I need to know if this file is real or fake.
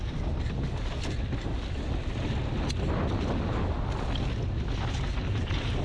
real